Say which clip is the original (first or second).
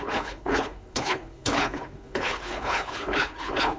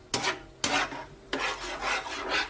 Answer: second